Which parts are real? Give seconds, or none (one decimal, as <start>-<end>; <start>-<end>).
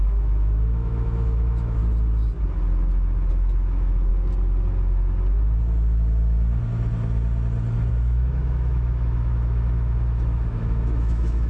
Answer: 1.8-3.3; 4.1-7.9